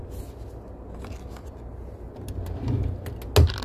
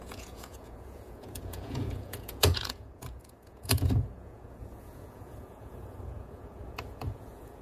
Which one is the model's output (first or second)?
second